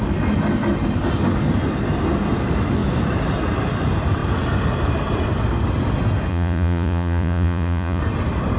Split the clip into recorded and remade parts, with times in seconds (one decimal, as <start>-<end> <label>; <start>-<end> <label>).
0.0-6.3 recorded; 6.3-8.0 remade; 8.0-8.6 recorded